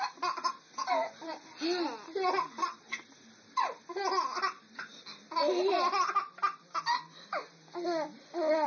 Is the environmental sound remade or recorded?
recorded